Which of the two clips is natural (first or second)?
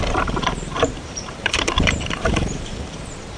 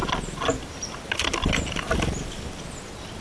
second